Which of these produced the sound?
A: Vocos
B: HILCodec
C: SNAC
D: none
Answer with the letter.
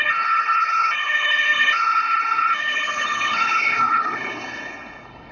B